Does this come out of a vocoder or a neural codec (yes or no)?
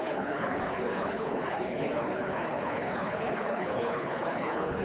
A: yes